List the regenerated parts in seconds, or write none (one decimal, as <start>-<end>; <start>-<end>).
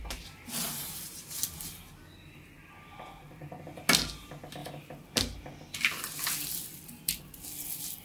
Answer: 0.8-1.4